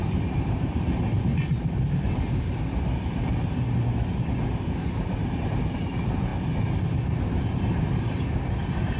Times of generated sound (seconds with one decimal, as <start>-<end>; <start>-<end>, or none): 0.0-0.7